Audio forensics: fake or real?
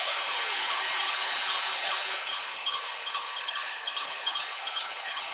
fake